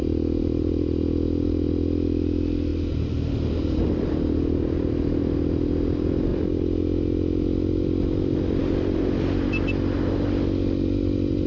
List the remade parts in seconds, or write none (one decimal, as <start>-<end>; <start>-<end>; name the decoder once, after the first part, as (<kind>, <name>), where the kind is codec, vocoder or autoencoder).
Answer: none